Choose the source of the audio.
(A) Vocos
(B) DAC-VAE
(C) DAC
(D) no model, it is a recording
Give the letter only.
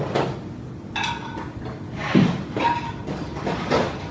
D